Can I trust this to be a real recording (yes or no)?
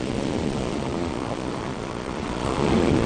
no